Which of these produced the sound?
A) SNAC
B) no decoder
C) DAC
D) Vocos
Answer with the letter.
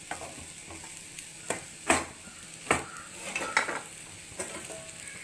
B